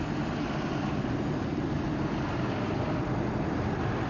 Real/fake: real